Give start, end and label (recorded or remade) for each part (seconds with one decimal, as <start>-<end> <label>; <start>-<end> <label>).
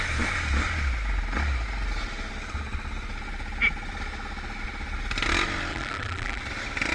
0.0-5.7 recorded; 5.7-6.4 remade; 6.4-6.9 recorded